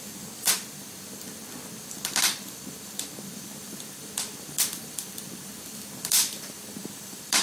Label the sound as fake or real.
fake